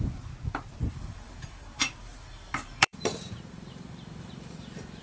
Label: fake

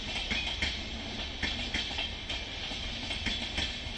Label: real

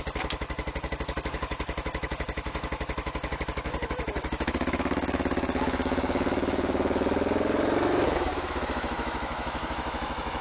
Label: fake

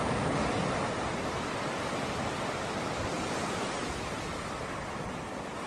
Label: real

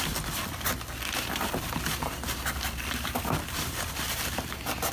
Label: real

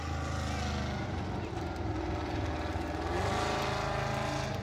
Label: real